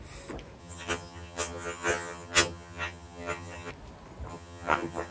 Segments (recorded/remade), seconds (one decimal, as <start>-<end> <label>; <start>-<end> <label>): 0.0-0.6 recorded; 0.6-3.7 remade; 3.7-4.3 recorded; 4.3-5.1 remade